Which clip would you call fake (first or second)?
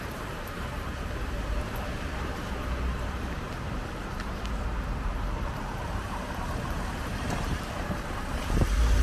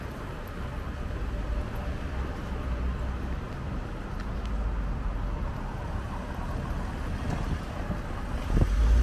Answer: first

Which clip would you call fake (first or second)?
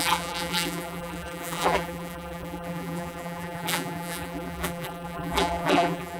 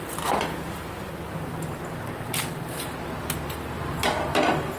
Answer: first